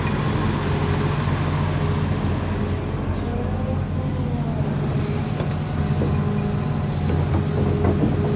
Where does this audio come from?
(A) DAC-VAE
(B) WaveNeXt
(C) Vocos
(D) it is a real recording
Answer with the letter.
D